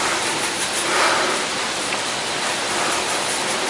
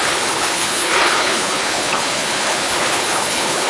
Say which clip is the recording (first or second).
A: first